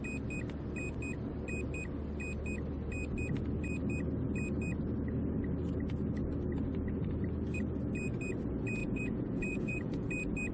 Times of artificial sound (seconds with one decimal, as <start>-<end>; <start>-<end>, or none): 8.8-10.1